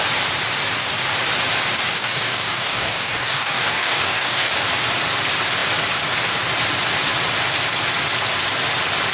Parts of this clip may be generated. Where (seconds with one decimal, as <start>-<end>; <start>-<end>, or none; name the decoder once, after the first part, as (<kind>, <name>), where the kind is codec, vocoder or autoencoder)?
1.9-4.5 (codec, DAC)